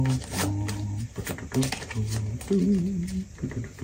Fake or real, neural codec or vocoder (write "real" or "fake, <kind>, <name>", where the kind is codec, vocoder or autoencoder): real